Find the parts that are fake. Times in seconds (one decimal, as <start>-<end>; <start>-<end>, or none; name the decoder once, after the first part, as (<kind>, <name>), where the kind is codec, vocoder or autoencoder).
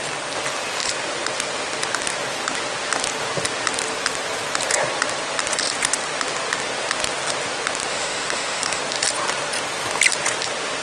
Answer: 7.9-8.8 (autoencoder, DAC-VAE)